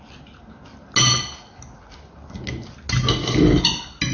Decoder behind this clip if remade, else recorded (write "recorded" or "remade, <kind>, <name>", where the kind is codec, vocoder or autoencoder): recorded